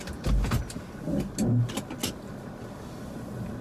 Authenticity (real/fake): real